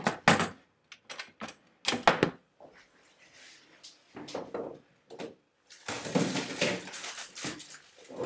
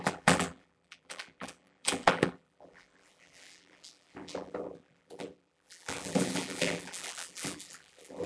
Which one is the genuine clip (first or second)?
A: first